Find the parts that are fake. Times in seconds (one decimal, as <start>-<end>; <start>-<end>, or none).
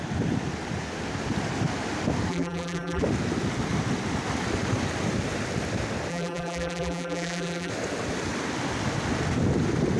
2.3-3.0; 6.1-7.7